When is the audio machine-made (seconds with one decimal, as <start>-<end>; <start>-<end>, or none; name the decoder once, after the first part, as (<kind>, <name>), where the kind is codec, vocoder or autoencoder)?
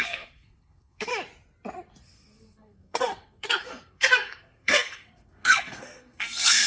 0.0-1.1 (codec, SNAC); 2.0-6.7